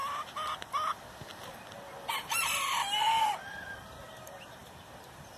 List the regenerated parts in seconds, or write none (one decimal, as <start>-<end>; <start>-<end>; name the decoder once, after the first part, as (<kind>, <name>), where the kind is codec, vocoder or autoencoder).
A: none